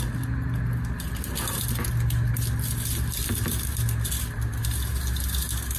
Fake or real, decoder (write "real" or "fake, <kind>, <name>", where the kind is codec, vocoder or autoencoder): real